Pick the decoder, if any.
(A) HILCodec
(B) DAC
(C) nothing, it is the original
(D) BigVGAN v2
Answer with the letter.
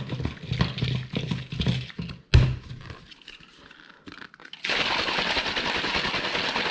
C